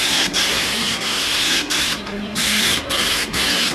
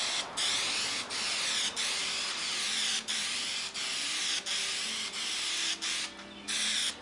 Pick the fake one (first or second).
first